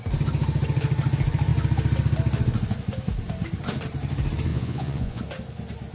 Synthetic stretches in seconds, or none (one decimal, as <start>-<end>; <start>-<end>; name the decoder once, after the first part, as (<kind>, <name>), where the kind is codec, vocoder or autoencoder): 4.5-5.2 (vocoder, Vocos)